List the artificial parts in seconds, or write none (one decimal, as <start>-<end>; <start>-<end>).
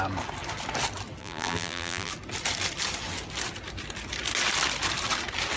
1.2-2.1